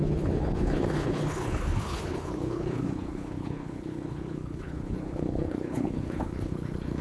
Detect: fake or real fake